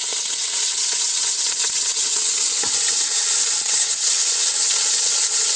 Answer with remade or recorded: remade